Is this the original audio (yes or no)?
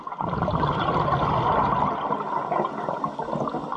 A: yes